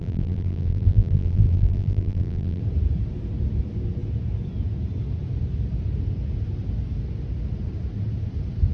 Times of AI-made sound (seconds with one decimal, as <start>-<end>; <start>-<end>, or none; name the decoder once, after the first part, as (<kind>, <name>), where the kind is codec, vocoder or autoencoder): 0.0-2.6 (vocoder, BigVGAN v2)